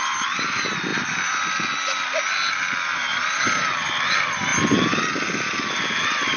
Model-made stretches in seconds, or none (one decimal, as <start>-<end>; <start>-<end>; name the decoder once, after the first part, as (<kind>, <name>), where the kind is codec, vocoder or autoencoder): none